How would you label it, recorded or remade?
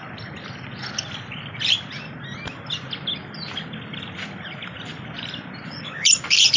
remade